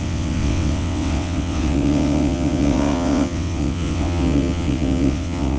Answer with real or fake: fake